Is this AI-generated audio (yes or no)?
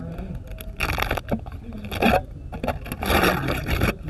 no